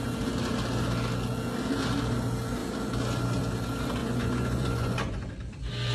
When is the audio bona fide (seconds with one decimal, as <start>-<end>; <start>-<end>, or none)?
0.0-4.0; 5.3-5.9